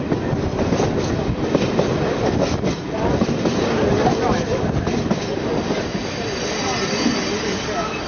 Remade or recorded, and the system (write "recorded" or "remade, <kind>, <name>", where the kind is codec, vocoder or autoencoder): recorded